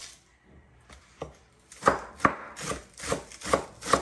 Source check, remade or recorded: recorded